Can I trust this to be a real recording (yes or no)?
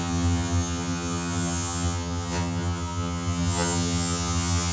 no